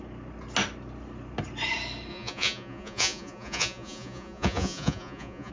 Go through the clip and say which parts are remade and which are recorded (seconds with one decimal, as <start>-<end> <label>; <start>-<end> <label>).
0.0-2.1 recorded; 2.1-5.5 remade